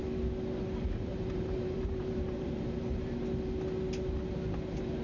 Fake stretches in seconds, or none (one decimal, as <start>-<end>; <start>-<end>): 1.1-3.2